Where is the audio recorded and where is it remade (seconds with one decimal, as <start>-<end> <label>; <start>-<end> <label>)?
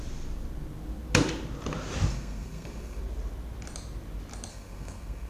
0.0-2.1 recorded; 2.1-3.0 remade; 3.0-4.5 recorded; 4.5-5.3 remade